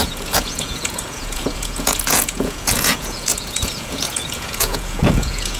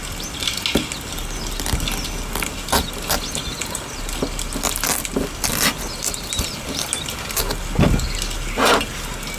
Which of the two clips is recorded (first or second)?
second